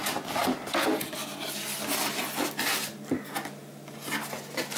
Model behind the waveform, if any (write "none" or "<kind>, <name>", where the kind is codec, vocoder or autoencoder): none